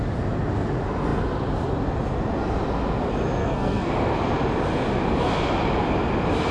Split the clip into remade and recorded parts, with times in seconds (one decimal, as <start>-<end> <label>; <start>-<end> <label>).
0.0-3.4 recorded; 3.4-3.9 remade; 3.9-6.5 recorded